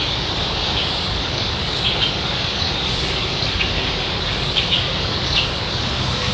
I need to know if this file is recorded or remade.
remade